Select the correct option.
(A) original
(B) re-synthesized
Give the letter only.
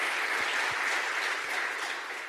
A